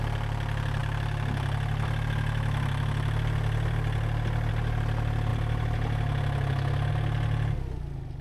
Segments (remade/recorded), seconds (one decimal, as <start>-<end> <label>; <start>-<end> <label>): 0.0-8.2 recorded